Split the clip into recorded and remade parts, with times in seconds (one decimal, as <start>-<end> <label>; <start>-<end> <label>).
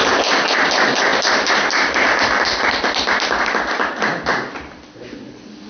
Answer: 0.0-5.7 recorded